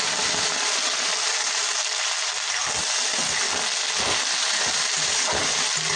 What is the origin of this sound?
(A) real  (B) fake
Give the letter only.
A